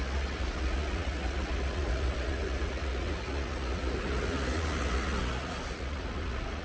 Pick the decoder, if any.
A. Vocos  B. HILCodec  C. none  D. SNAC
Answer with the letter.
A